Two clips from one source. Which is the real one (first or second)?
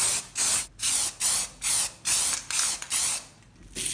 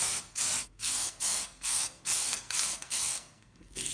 first